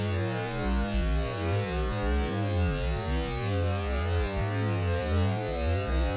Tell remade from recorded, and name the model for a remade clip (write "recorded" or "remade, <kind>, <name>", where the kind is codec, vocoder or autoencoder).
recorded